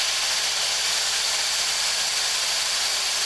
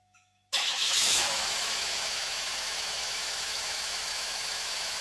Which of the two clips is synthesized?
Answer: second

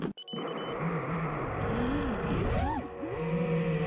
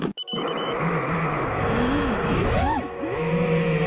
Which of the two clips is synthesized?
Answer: second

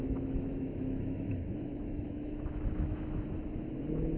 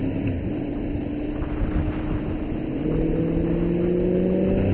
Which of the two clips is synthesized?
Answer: first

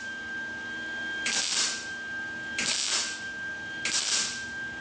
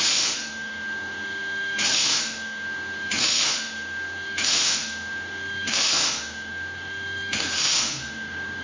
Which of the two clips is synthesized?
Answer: second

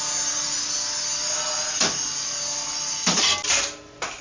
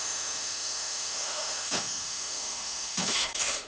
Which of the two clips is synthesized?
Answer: second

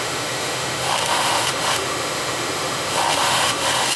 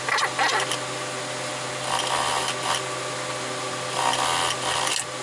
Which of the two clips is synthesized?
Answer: first